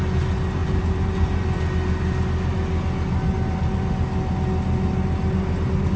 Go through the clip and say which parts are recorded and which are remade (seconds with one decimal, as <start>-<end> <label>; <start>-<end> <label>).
0.0-6.0 recorded